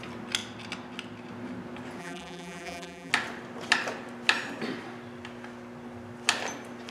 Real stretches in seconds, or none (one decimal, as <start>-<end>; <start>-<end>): 0.0-2.0; 3.1-6.9